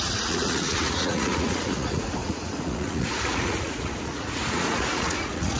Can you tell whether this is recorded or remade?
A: remade